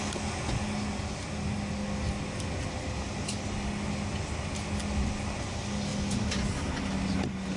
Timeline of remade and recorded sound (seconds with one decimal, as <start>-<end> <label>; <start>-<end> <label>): 0.0-7.6 recorded